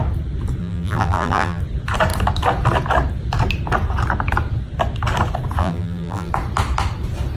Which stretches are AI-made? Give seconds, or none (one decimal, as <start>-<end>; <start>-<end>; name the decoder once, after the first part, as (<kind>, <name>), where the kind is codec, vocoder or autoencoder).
0.6-1.6 (vocoder, BigVGAN v2); 5.6-6.3